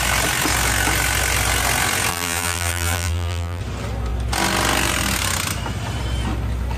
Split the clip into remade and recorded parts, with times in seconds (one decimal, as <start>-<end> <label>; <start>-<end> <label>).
0.0-2.1 recorded; 2.1-3.6 remade; 3.6-6.8 recorded